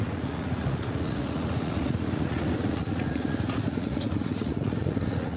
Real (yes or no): no